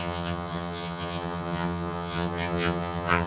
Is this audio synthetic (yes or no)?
yes